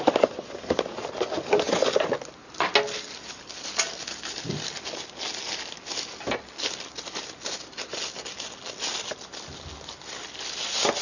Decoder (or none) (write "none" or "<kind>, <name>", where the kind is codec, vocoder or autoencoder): none